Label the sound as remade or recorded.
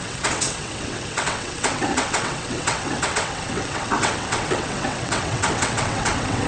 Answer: remade